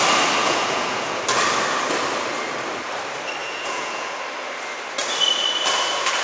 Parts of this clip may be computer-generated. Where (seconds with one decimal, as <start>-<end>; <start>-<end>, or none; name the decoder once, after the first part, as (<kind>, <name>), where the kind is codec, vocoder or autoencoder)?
0.4-1.2 (vocoder, Vocos); 3.4-4.2